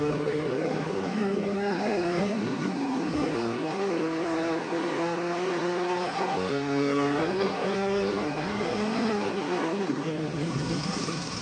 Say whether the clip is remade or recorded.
remade